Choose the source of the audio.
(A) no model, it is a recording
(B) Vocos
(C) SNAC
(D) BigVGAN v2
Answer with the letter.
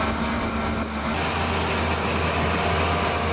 A